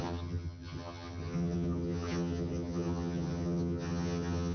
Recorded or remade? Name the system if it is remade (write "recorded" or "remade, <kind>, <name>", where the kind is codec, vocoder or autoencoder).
remade, vocoder, HiFi-GAN